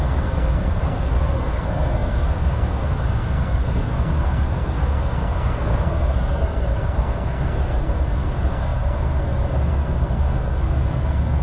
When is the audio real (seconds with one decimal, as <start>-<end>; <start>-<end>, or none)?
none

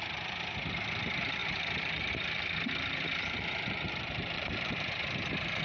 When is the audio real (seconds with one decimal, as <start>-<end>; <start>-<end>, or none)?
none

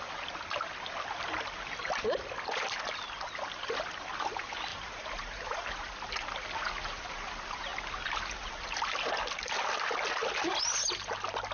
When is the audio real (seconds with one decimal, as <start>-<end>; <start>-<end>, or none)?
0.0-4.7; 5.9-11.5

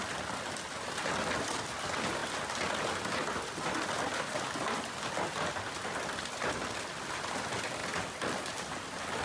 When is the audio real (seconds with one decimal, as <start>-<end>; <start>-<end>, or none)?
0.0-7.8; 8.4-9.2

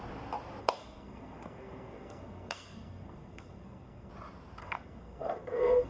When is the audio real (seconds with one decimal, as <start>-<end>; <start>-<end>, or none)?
0.0-0.6; 4.1-4.6

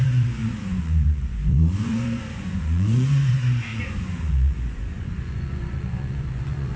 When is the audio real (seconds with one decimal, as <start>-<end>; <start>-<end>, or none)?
none